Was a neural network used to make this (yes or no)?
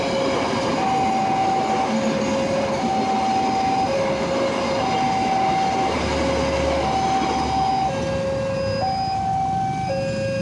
no